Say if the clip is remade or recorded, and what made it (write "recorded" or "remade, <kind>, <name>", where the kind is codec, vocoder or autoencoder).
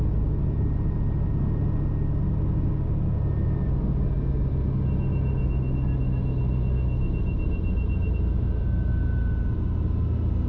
recorded